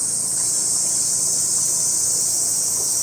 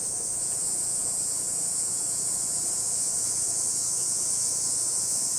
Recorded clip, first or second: first